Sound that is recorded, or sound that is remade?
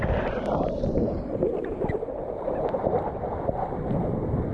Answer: remade